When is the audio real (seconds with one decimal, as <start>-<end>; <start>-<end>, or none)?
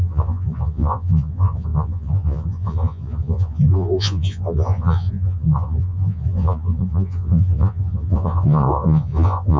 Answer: none